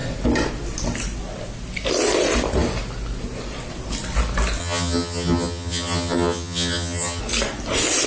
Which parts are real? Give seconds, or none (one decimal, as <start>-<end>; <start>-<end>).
0.0-4.6; 7.2-8.1